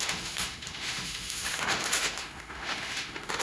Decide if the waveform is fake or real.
fake